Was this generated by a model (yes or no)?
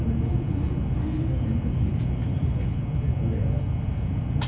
no